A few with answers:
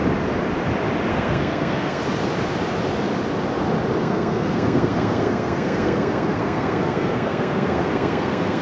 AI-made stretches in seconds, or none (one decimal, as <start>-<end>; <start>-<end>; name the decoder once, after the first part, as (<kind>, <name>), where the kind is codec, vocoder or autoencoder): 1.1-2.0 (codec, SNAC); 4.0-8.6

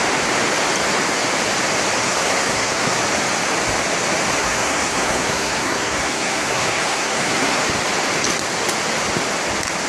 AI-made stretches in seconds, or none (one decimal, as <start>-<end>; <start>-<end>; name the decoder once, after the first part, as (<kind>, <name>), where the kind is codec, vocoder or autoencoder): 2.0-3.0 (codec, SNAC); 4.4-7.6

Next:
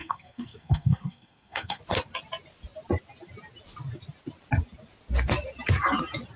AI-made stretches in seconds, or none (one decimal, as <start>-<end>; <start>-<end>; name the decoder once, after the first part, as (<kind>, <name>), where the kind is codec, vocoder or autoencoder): 0.0-1.8 (codec, SNAC)

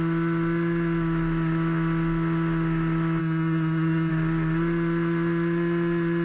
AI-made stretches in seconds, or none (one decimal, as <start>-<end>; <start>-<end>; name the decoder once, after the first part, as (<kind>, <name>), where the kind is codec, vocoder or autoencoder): 3.2-4.1 (codec, SNAC)